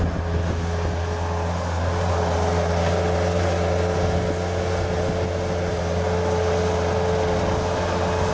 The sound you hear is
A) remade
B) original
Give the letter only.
B